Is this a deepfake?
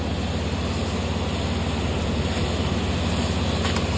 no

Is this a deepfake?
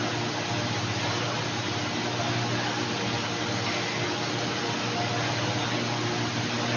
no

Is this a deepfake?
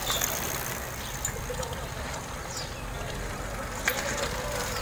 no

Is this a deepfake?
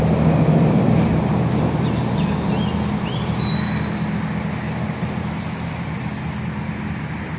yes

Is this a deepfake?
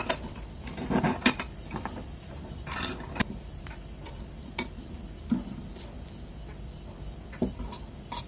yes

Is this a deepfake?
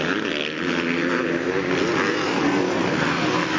no